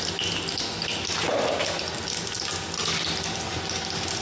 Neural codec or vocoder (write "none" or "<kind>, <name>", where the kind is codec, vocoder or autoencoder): none